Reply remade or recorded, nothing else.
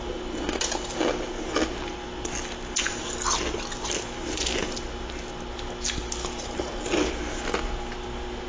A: recorded